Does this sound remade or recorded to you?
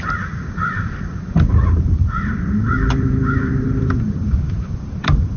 remade